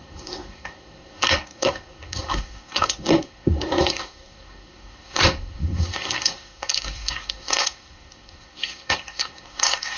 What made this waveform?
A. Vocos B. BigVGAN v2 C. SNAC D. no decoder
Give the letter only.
C